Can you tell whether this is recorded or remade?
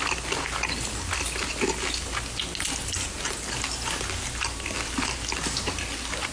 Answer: recorded